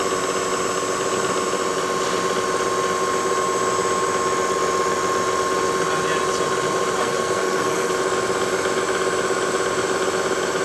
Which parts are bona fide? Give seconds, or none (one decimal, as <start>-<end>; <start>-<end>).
0.0-7.0; 7.9-10.6